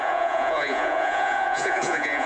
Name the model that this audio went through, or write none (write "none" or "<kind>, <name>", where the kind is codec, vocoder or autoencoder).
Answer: vocoder, Vocos